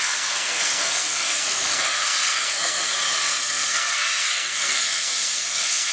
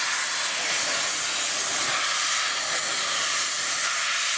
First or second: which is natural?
second